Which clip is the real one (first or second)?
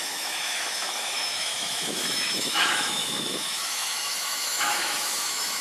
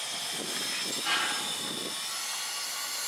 second